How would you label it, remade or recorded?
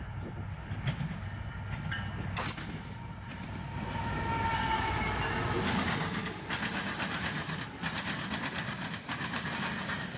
recorded